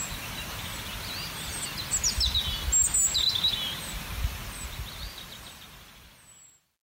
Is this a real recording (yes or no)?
yes